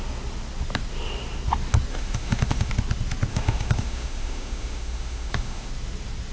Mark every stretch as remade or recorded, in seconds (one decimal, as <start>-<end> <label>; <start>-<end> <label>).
0.0-1.9 recorded; 1.9-2.7 remade; 2.7-3.3 recorded; 3.3-5.7 remade; 5.7-6.3 recorded